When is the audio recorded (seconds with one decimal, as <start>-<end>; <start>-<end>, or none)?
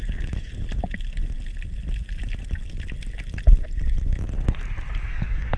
0.5-5.0